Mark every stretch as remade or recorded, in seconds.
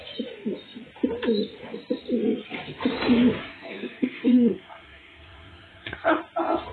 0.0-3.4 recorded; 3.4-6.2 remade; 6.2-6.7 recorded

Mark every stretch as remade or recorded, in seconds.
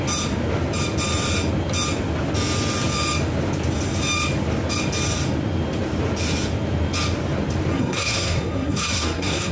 0.0-7.7 recorded; 7.7-9.5 remade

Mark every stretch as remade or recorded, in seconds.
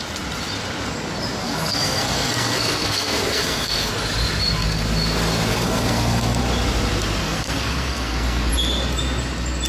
0.0-1.4 recorded; 1.4-3.9 remade; 3.9-5.5 recorded; 5.5-6.4 remade; 6.4-7.2 recorded; 7.2-8.5 remade; 8.5-9.7 recorded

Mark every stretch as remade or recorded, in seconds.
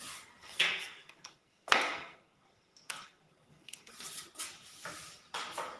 0.0-0.4 recorded; 0.4-3.9 remade; 3.9-5.8 recorded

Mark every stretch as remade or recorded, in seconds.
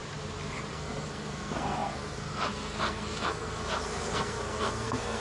0.0-0.7 recorded; 0.7-5.2 remade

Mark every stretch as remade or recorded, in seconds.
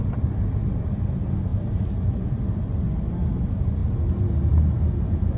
0.0-5.4 recorded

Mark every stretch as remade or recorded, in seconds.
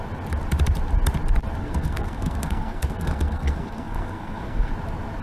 0.0-1.6 recorded; 1.6-4.7 remade; 4.7-5.2 recorded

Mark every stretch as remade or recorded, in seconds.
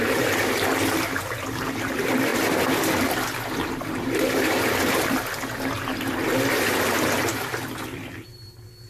0.0-8.9 recorded